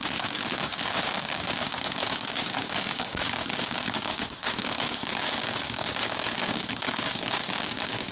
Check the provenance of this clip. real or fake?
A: fake